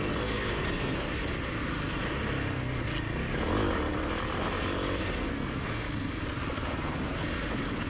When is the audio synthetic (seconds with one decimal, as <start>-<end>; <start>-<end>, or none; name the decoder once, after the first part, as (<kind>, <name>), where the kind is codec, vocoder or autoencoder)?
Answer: 5.2-6.2 (codec, SNAC)